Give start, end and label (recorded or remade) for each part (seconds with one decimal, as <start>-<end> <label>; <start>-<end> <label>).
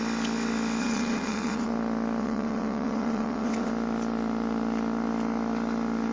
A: 0.0-0.8 recorded; 0.8-1.7 remade; 1.7-2.2 recorded; 2.2-3.7 remade; 3.7-6.1 recorded